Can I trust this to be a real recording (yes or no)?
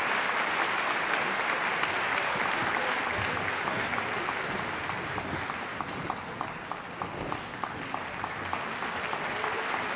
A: yes